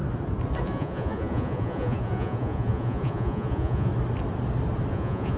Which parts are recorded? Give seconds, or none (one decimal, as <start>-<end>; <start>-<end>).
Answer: 0.0-0.6; 3.9-4.9